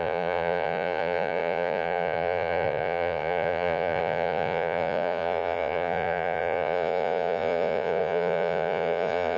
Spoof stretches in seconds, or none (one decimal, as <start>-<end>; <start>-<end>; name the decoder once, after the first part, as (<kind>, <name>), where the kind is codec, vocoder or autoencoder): 0.0-9.4 (vocoder, Vocos)